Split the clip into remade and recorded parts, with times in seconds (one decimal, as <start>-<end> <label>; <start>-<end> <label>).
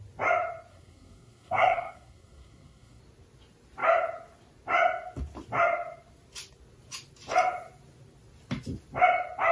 0.0-0.7 recorded; 0.7-3.0 remade; 3.0-9.5 recorded